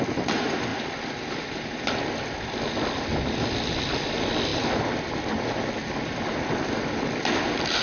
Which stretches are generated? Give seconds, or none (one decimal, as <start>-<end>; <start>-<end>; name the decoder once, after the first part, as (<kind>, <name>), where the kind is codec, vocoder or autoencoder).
none